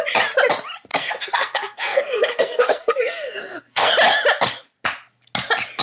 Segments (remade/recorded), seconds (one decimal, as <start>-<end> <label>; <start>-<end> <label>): 0.0-0.9 recorded; 0.9-3.9 remade; 3.9-5.8 recorded